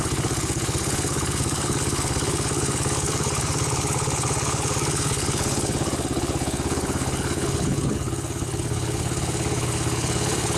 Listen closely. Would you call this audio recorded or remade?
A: remade